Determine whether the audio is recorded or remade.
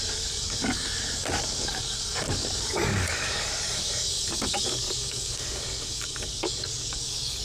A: remade